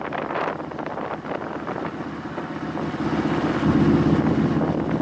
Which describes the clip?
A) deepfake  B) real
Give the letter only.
B